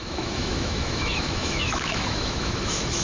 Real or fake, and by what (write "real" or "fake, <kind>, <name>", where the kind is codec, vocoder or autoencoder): fake, autoencoder, DAC-VAE